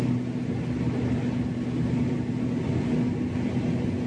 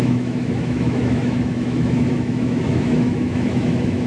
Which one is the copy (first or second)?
second